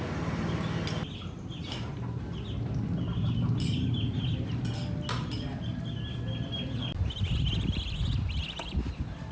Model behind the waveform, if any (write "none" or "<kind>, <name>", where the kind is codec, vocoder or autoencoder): none